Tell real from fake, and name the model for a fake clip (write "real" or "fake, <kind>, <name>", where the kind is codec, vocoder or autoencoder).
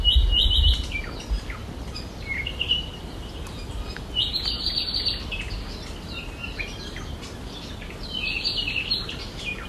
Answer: real